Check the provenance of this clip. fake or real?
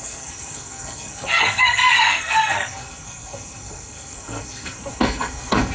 fake